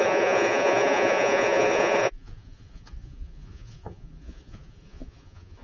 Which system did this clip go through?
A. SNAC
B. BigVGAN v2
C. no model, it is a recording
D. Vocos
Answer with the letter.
D